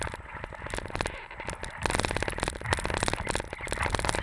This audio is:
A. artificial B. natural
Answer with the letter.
B